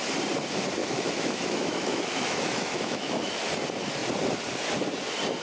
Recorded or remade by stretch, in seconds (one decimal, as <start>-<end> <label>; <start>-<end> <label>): 0.0-0.8 recorded; 0.8-3.4 remade; 3.4-5.4 recorded